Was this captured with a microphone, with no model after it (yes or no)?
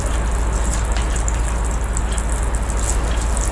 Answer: yes